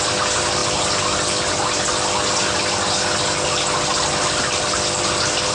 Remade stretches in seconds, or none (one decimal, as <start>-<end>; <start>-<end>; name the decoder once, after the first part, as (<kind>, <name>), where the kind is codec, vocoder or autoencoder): none